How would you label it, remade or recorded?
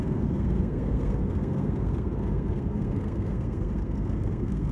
remade